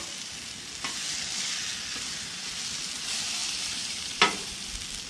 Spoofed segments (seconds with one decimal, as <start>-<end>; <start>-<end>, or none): 3.4-4.5